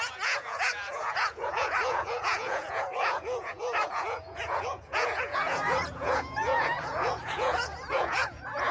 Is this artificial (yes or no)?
yes